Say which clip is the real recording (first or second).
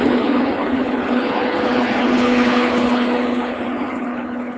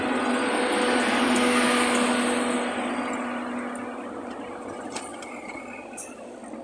second